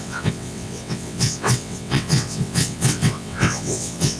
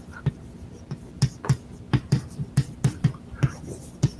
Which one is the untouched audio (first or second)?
second